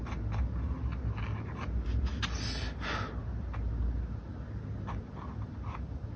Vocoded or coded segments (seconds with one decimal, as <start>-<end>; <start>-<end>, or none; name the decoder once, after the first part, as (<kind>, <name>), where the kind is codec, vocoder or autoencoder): none